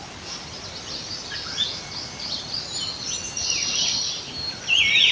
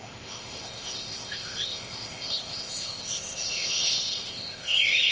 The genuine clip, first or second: first